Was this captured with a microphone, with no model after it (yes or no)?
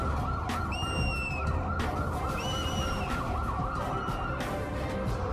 yes